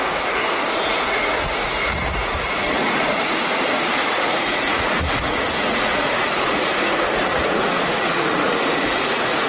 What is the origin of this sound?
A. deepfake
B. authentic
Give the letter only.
A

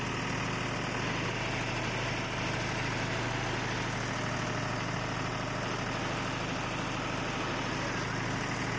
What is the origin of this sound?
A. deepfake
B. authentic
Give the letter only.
B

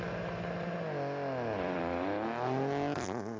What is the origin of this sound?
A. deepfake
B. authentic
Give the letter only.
B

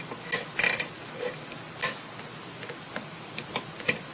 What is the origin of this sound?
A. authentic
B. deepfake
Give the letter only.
A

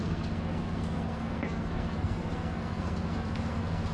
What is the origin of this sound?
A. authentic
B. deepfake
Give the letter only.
B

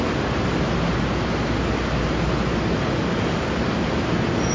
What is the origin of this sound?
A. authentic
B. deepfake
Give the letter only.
A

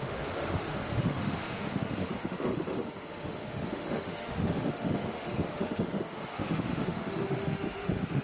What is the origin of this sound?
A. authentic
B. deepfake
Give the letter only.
B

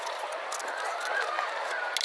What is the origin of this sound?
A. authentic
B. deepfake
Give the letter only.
A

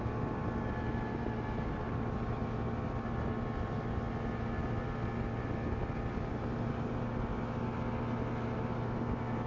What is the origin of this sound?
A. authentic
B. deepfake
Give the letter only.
A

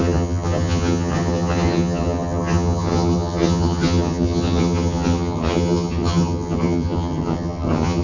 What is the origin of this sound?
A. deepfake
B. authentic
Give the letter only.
A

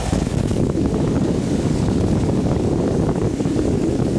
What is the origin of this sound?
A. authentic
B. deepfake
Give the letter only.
B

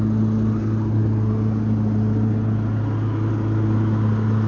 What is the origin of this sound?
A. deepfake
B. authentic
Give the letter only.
B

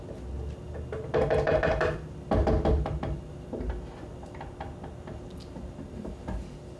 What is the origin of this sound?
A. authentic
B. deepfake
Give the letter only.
A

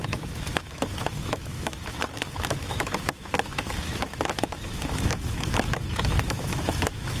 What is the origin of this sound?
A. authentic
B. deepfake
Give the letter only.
B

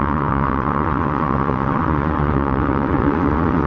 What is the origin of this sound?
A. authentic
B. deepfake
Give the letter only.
B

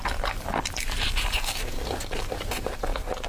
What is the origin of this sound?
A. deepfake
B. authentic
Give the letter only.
B